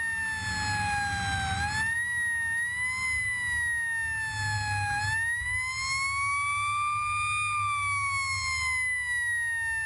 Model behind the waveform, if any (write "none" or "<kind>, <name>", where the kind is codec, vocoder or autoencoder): none